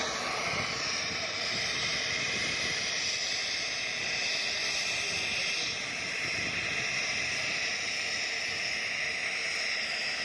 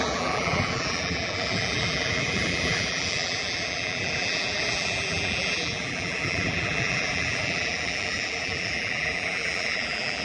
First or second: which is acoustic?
first